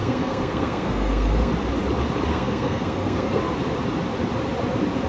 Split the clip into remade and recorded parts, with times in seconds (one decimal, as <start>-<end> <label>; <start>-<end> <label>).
0.0-1.5 remade; 1.5-2.3 recorded; 2.3-3.4 remade; 3.4-5.1 recorded